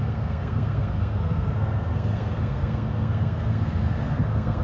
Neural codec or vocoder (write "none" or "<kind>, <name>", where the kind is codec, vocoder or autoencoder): codec, SNAC